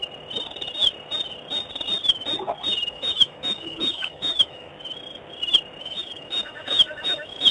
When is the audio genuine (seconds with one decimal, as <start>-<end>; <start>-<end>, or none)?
0.0-2.9; 4.7-5.8